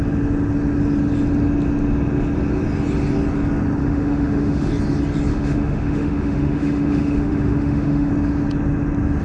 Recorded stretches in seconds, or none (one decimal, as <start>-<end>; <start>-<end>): 0.0-3.8; 4.7-5.3; 8.1-9.2